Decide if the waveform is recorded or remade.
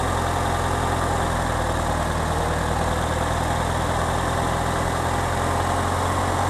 recorded